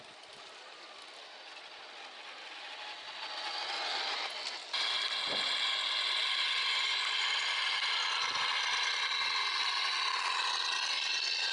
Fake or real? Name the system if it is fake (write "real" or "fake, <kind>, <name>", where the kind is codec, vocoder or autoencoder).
real